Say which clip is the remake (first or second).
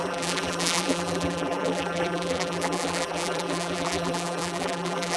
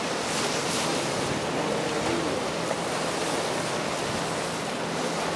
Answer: first